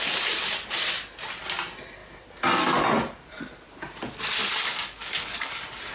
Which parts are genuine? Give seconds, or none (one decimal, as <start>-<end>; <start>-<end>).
0.0-4.4; 5.5-5.9